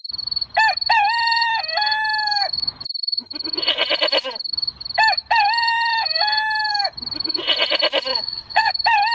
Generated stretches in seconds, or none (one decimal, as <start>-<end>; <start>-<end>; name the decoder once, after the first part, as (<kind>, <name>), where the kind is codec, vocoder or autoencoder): 8.1-8.7 (vocoder, WaveNeXt)